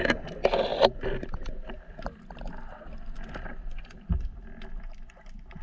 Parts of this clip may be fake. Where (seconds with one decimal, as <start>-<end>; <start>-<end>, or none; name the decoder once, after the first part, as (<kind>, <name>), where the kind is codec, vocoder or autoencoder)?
none